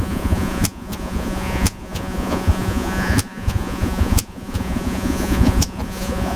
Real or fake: fake